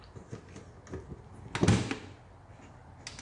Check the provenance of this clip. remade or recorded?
recorded